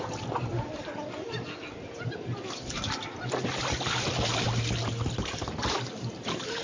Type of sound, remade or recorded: recorded